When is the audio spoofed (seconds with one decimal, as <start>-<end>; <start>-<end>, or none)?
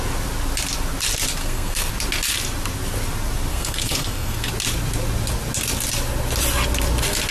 1.4-1.9; 3.5-4.5